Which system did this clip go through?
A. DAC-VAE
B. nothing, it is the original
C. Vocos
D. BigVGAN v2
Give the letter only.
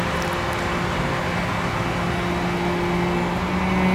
B